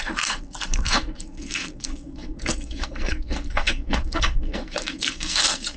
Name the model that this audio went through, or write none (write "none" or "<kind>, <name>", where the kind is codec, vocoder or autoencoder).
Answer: codec, SNAC